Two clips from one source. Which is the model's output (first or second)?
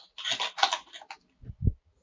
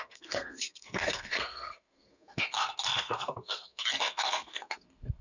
second